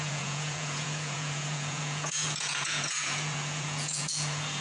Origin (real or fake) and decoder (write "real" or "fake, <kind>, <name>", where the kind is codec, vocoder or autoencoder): fake, vocoder, Vocos